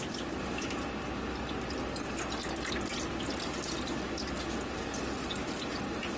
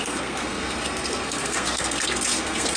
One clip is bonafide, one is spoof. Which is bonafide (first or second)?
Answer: first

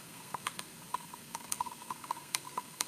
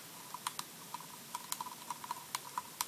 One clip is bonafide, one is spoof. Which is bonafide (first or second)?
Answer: second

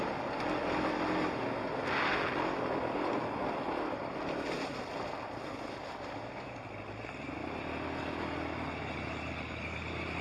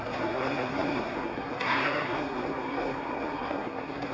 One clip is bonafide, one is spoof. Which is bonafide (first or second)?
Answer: first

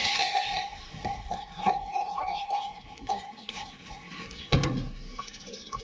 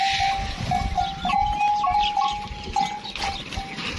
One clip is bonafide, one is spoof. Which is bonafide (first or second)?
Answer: second